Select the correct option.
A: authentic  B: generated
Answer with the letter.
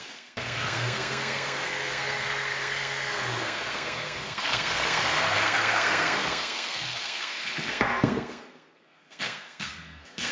B